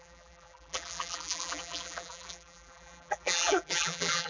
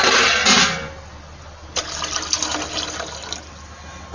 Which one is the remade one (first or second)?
first